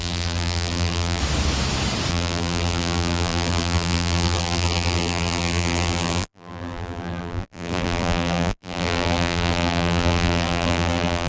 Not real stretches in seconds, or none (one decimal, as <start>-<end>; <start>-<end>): 0.0-1.2; 2.1-11.3